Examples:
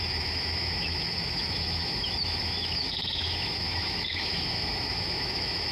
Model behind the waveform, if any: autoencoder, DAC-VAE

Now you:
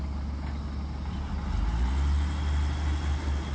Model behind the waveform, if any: none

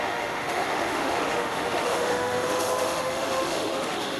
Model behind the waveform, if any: autoencoder, DAC-VAE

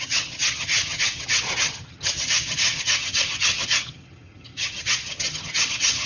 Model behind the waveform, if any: vocoder, HiFi-GAN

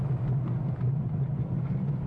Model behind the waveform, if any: none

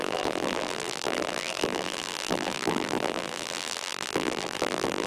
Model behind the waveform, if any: vocoder, BigVGAN v2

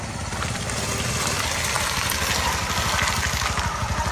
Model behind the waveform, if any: none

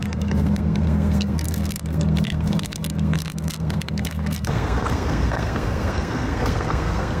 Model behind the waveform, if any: codec, SNAC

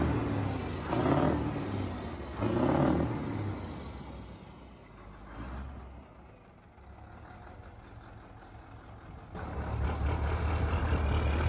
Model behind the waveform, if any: none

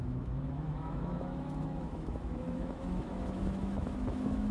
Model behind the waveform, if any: autoencoder, DAC-VAE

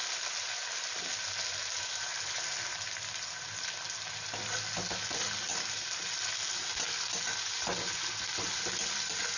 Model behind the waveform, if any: none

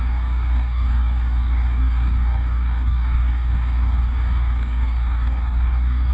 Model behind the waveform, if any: codec, DAC